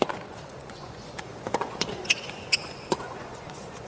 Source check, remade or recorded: remade